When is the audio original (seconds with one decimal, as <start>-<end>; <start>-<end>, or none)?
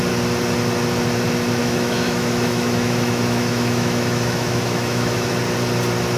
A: 0.0-1.6; 5.3-6.2